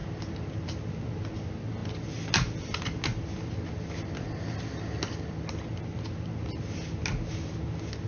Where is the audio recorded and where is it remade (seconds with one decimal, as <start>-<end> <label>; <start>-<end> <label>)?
0.0-8.1 recorded